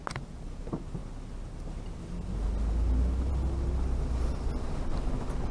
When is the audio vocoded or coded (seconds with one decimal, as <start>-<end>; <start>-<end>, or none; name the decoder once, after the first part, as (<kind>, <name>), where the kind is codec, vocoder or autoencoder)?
none

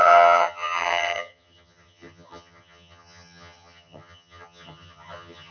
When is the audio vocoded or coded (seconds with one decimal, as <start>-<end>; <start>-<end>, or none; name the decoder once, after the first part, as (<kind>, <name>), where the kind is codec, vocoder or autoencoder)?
0.0-5.5 (vocoder, HiFi-GAN)

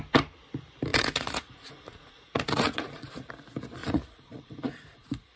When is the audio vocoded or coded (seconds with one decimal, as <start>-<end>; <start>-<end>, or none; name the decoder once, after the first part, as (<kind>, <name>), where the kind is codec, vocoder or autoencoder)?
0.9-3.3 (vocoder, Vocos); 3.8-5.4

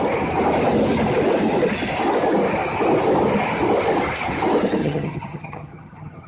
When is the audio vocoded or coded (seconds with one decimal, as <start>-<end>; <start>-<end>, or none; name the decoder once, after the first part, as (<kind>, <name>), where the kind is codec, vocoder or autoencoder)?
4.8-6.3 (vocoder, HiFi-GAN)